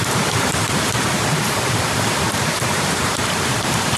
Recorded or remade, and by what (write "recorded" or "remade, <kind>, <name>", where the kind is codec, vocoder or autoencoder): remade, vocoder, BigVGAN v2